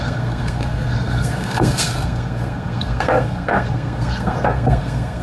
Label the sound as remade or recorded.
remade